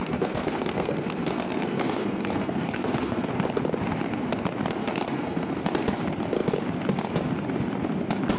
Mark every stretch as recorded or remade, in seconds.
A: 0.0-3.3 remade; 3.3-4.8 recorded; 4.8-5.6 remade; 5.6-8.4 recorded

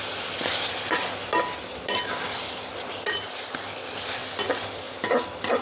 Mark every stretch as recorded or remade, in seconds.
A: 0.0-5.6 recorded

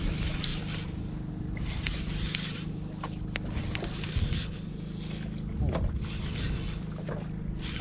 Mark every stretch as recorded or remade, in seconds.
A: 0.0-4.1 recorded; 4.1-4.7 remade; 4.7-7.8 recorded

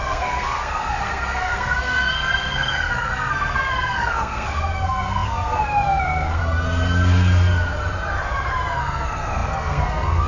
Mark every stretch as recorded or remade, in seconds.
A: 0.0-6.4 remade; 6.4-8.8 recorded; 8.8-10.3 remade

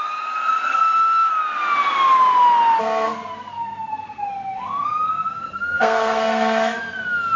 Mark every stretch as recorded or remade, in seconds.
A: 0.0-0.7 recorded; 0.7-1.3 remade; 1.3-2.8 recorded; 2.8-6.8 remade; 6.8-7.4 recorded

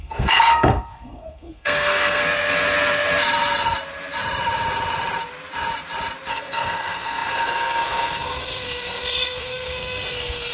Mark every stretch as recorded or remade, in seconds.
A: 0.0-2.2 remade; 2.2-6.3 recorded; 6.3-10.5 remade